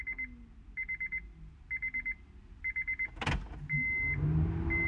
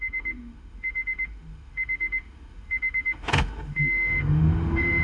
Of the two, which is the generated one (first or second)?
second